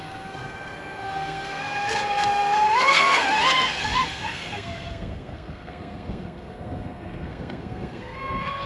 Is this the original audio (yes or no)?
no